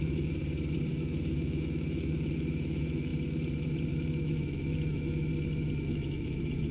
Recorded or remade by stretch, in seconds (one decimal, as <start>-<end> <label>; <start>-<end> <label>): 0.0-0.4 remade; 0.4-0.9 recorded; 0.9-3.1 remade; 3.1-3.9 recorded; 3.9-5.3 remade; 5.3-5.8 recorded; 5.8-6.7 remade